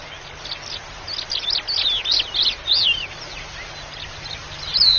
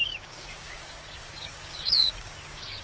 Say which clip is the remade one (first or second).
second